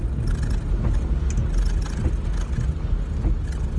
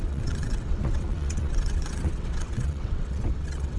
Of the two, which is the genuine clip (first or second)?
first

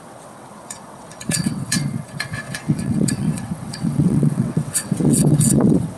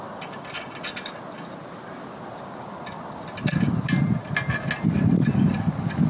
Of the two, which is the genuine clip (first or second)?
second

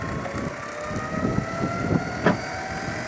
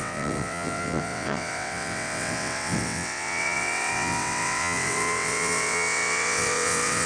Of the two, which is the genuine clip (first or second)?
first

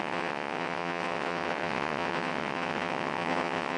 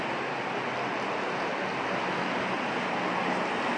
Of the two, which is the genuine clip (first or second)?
second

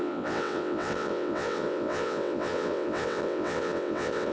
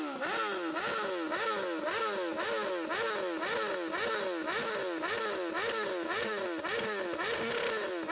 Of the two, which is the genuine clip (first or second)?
second